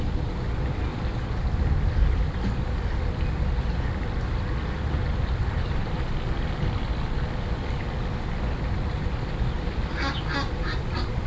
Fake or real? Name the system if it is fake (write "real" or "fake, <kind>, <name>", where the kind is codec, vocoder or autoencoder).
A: real